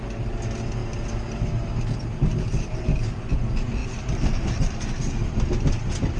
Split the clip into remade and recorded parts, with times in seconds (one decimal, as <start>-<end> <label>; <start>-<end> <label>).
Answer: 0.0-6.2 recorded